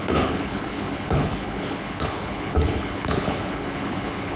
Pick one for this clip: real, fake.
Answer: fake